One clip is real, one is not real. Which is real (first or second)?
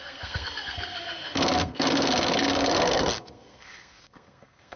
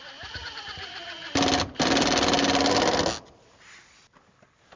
second